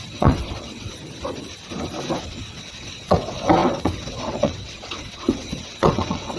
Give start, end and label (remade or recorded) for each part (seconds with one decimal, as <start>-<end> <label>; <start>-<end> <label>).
0.0-0.9 remade; 0.9-2.2 recorded; 2.2-6.4 remade